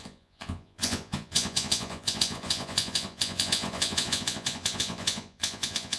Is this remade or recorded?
remade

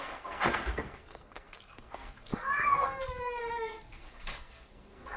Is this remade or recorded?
remade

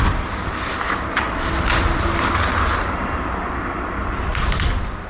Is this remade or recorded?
recorded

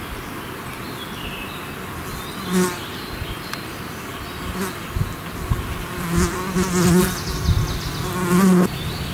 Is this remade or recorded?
recorded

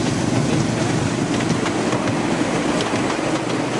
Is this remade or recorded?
recorded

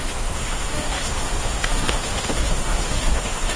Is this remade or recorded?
remade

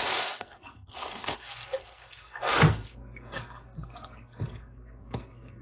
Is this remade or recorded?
remade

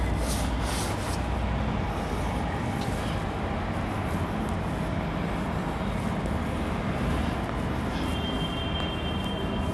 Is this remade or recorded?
recorded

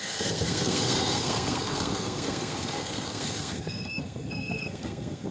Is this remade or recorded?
remade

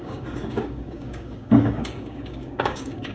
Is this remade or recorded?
remade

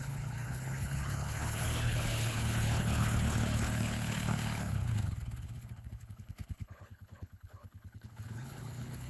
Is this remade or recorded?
remade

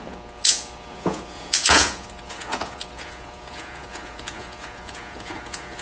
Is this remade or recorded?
remade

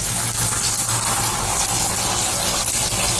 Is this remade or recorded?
recorded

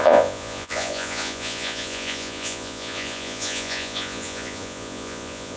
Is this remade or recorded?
remade